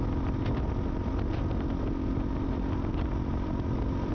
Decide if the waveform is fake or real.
real